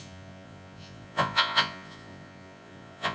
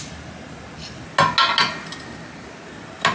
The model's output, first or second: first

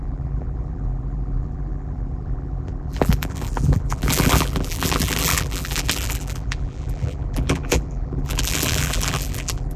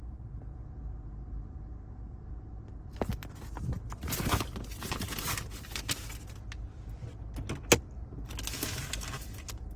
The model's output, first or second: first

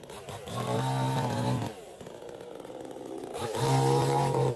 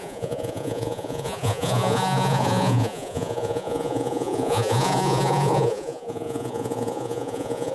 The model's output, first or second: second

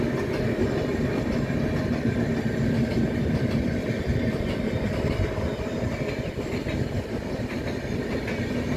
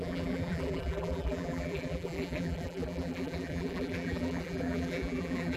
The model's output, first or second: second